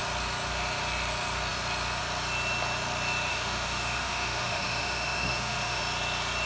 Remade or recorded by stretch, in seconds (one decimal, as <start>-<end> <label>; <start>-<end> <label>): 0.0-3.3 recorded; 3.3-5.8 remade; 5.8-6.5 recorded